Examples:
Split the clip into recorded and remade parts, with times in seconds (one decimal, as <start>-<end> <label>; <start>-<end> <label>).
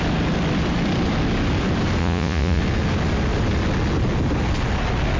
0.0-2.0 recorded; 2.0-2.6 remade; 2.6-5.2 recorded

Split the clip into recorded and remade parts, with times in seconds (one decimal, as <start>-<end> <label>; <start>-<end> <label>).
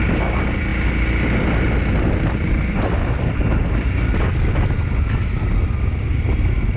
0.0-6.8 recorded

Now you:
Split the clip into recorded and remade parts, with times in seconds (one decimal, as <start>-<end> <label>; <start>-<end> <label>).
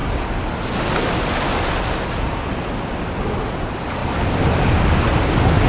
0.0-4.0 recorded; 4.0-5.2 remade; 5.2-5.7 recorded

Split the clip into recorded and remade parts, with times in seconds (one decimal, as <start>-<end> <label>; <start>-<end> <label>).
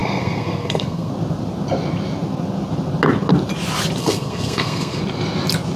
0.0-1.1 remade; 1.1-4.0 recorded; 4.0-5.0 remade; 5.0-5.8 recorded